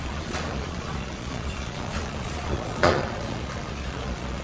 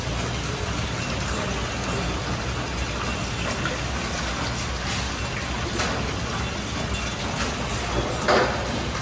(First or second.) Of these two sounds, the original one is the second